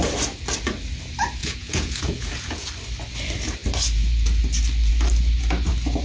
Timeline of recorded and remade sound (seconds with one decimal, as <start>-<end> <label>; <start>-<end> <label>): 0.0-1.4 recorded; 1.4-2.7 remade; 2.7-6.0 recorded